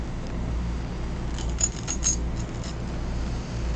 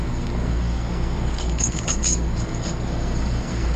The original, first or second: first